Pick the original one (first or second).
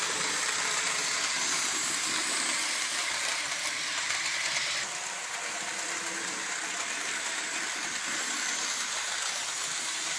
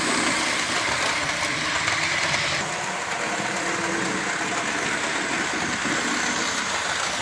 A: second